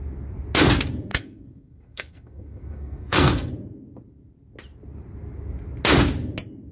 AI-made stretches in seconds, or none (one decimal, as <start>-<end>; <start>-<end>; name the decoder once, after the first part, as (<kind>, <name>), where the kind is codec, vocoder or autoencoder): 1.1-3.5 (codec, SNAC)

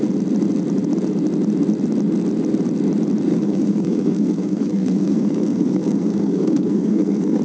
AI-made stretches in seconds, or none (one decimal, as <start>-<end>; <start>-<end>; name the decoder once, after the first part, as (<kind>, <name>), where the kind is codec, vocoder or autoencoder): 3.3-7.4 (codec, SNAC)

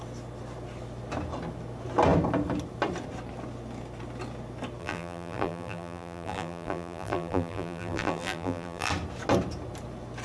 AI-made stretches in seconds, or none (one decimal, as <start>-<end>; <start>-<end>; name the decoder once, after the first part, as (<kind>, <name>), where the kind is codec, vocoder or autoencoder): 4.8-8.9 (vocoder, BigVGAN v2)

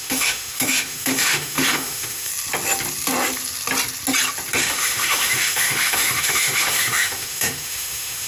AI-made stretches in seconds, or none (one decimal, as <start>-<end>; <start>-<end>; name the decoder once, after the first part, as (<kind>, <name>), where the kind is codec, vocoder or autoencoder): 0.0-2.3 (autoencoder, DAC-VAE); 4.6-8.3